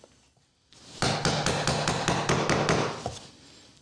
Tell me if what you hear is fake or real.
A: real